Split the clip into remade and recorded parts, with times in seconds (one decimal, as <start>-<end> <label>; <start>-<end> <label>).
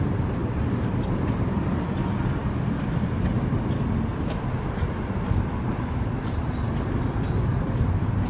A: 0.0-0.4 recorded; 0.4-1.2 remade; 1.2-8.3 recorded